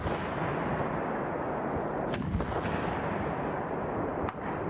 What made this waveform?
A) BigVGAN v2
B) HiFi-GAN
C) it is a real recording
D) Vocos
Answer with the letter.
C